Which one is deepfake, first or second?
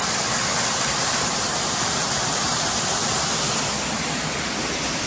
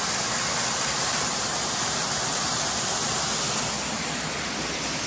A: first